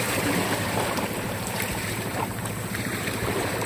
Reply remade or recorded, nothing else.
remade